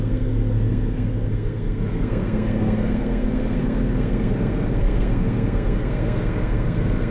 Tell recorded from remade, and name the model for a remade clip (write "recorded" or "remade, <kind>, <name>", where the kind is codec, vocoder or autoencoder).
remade, codec, SNAC